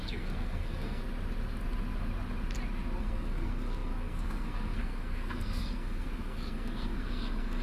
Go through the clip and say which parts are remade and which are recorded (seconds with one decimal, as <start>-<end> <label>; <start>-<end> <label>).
0.0-1.0 remade; 1.0-3.0 recorded; 3.0-7.6 remade